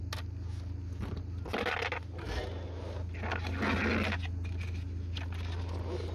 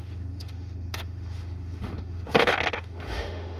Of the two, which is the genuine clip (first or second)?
first